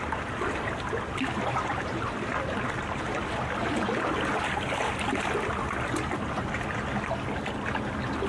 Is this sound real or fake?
real